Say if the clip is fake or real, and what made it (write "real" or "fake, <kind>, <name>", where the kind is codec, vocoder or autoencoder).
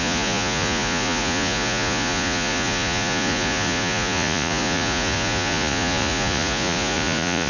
fake, vocoder, Vocos